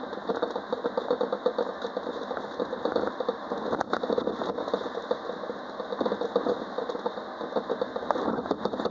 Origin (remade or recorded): recorded